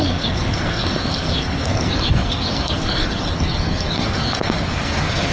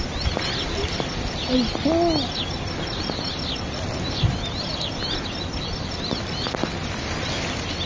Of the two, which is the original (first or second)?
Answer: second